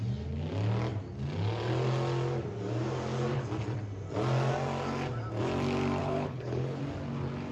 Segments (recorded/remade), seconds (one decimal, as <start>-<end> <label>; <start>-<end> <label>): 0.0-6.0 recorded; 6.0-6.8 remade; 6.8-7.5 recorded